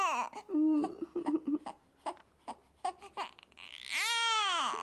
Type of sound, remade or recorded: recorded